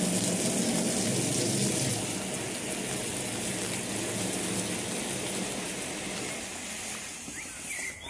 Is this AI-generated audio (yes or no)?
no